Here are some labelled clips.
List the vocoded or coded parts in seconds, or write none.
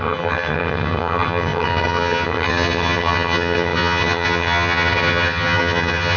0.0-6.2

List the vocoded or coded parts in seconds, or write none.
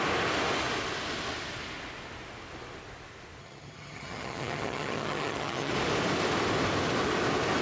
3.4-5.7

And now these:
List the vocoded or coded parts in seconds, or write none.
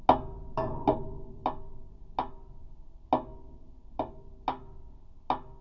none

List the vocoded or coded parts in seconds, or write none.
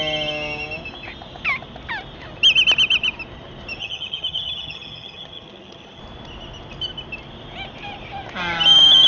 3.8-6.0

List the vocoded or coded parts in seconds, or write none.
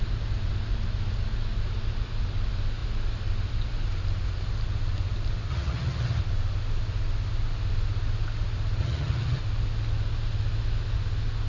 5.5-6.2; 8.8-9.4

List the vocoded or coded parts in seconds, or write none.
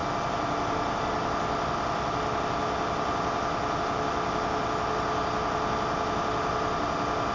none